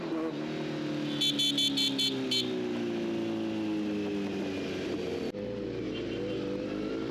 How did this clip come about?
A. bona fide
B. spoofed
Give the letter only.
A